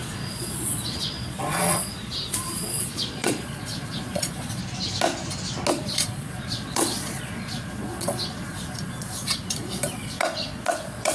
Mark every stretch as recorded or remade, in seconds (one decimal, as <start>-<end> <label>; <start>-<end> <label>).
0.0-4.6 remade; 4.6-5.7 recorded; 5.7-11.1 remade